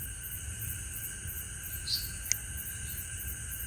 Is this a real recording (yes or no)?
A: yes